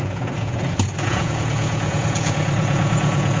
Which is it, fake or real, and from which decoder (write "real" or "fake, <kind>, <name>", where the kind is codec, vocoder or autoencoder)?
fake, vocoder, Vocos